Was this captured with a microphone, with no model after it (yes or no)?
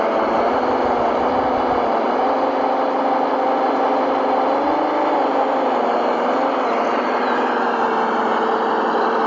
yes